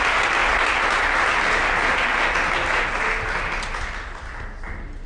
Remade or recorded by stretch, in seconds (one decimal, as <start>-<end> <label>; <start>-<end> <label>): 0.0-5.1 recorded